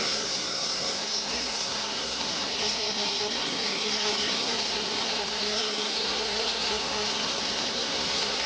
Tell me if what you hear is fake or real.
fake